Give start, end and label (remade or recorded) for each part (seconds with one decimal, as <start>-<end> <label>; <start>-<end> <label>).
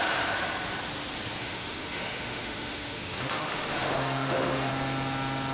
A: 0.0-1.4 recorded; 1.4-4.7 remade; 4.7-5.5 recorded